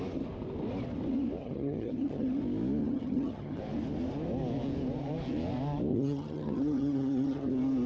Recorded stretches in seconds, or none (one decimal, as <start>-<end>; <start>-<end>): 0.0-1.4; 2.4-2.8; 3.6-5.9; 7.5-7.9